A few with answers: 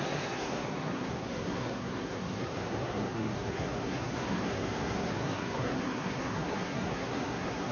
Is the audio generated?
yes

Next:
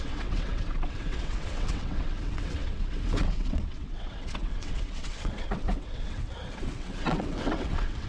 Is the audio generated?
yes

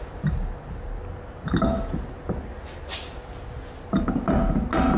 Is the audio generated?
no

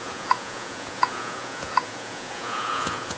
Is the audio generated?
yes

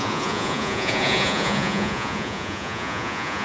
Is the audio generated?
yes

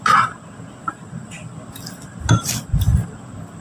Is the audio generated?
no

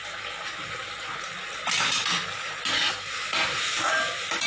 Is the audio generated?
no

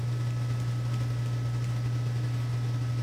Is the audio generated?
no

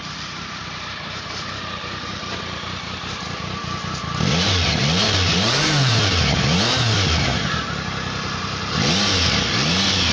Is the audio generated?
yes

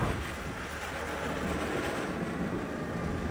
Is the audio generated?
no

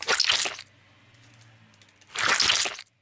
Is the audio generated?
no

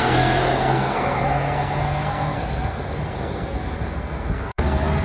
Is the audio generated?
yes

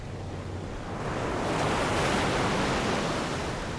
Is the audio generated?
no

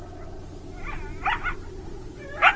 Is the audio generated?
no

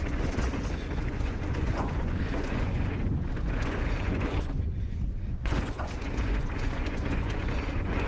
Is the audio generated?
yes